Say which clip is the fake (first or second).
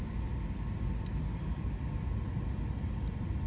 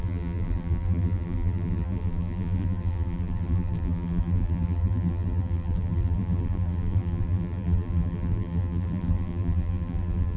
second